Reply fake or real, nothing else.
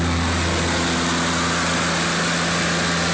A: real